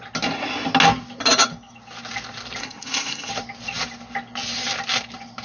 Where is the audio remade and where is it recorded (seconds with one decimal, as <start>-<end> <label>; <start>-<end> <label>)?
0.0-2.6 recorded; 2.6-3.3 remade; 3.3-5.4 recorded